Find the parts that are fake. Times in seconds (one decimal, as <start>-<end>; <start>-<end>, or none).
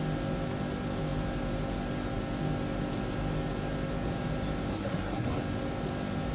4.7-5.4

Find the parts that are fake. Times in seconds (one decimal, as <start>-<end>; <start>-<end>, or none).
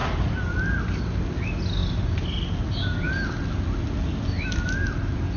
none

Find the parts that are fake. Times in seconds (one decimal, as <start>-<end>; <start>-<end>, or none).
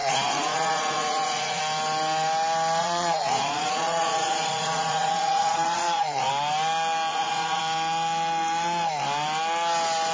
0.0-1.6; 2.8-6.3; 7.1-7.6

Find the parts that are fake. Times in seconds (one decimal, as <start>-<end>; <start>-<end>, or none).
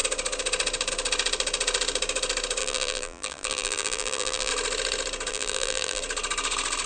2.6-4.5; 5.3-6.0